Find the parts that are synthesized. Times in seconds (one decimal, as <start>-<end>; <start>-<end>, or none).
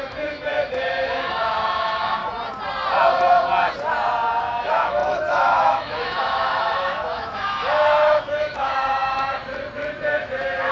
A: 0.0-2.2; 4.4-9.4; 10.0-10.7